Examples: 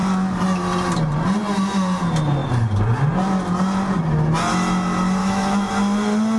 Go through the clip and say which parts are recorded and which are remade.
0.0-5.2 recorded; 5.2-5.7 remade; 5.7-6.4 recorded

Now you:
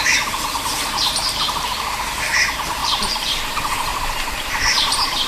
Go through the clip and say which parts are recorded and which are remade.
0.0-2.8 recorded; 2.8-3.4 remade; 3.4-3.9 recorded; 3.9-5.3 remade

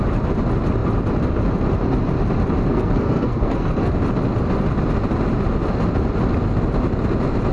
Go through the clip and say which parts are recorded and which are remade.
0.0-2.7 recorded; 2.7-3.9 remade; 3.9-7.5 recorded